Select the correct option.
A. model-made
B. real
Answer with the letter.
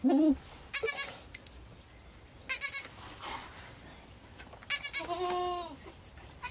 B